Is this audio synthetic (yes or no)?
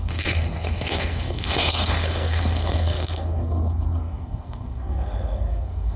yes